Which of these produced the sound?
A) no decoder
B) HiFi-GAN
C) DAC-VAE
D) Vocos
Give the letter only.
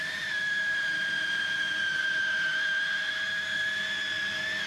A